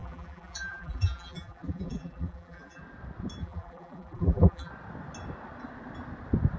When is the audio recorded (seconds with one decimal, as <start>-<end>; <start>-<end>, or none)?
2.8-3.4; 4.7-6.6